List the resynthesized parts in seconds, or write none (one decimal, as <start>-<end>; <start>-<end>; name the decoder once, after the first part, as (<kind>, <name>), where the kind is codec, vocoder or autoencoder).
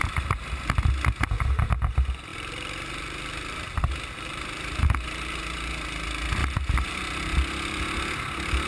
2.3-5.4 (vocoder, BigVGAN v2); 6.4-7.2